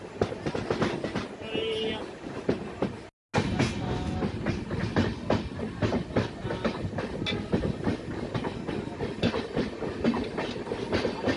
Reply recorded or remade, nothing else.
recorded